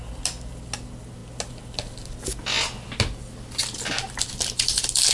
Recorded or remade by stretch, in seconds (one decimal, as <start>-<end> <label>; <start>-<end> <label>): 0.0-5.1 recorded